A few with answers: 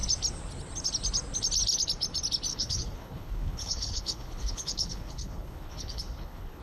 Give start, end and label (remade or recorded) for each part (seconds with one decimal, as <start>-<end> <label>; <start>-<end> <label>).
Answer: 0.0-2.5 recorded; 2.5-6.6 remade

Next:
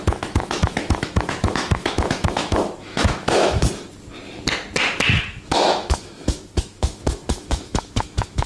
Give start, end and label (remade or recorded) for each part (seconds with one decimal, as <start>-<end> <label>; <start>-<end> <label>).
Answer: 0.0-3.6 remade; 3.6-5.3 recorded; 5.3-8.5 remade

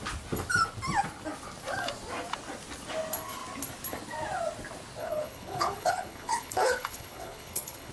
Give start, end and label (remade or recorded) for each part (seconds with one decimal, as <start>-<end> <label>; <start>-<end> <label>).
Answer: 0.0-5.0 recorded; 5.0-7.9 remade

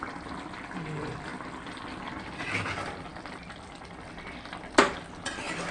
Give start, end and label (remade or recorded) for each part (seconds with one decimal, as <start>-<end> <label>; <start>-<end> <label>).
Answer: 0.0-5.7 recorded